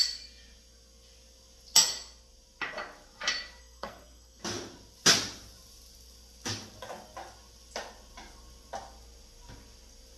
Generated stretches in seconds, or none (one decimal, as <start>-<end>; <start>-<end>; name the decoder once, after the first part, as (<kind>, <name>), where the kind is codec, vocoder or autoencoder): 3.6-4.4 (codec, SNAC)